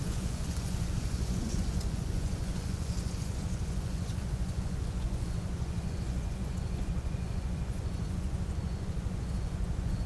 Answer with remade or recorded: remade